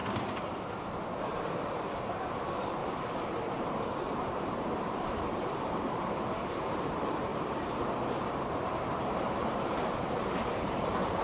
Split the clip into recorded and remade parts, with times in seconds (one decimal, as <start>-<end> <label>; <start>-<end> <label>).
0.0-1.0 recorded; 1.0-2.8 remade; 2.8-3.4 recorded; 3.4-7.3 remade; 7.3-8.7 recorded; 8.7-11.2 remade